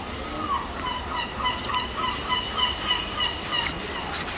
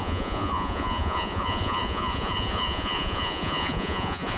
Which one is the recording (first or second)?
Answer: first